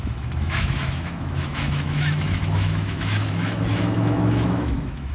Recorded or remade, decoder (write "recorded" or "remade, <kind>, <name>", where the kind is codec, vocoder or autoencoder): remade, autoencoder, DAC-VAE